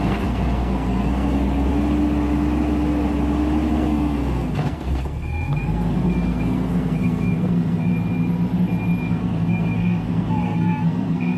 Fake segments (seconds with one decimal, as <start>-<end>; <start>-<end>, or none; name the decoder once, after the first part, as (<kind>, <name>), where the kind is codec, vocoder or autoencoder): 0.0-1.7 (codec, SNAC); 3.7-7.9; 9.0-11.4